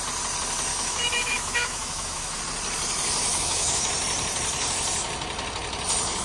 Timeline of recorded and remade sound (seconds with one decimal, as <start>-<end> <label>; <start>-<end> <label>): 0.0-0.7 recorded; 0.7-2.4 remade; 2.4-3.3 recorded; 3.3-3.9 remade; 3.9-6.2 recorded